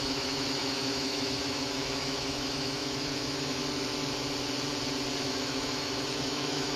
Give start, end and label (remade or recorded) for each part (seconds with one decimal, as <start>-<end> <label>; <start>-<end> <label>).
0.0-3.6 remade; 3.6-5.2 recorded; 5.2-6.8 remade